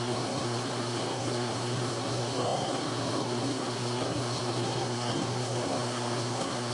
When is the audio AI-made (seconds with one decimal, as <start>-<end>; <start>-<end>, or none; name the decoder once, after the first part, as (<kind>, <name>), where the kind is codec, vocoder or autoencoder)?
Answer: 0.0-6.7 (codec, SNAC)